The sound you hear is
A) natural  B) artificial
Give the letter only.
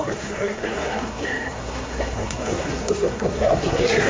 B